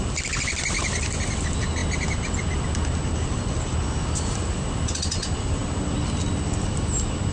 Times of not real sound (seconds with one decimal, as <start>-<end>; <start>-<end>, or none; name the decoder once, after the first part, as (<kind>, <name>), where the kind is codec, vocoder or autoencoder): none